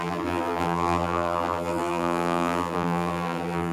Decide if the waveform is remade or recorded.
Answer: remade